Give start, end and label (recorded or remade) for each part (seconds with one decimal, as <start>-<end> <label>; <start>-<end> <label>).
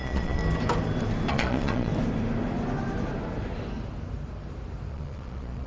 0.0-0.4 remade; 0.4-1.3 recorded; 1.3-1.9 remade; 1.9-4.9 recorded; 4.9-5.7 remade